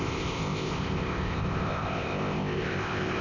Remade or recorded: remade